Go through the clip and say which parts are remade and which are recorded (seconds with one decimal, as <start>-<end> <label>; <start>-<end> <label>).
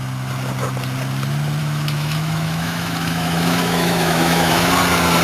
0.0-1.6 recorded; 1.6-4.7 remade; 4.7-5.2 recorded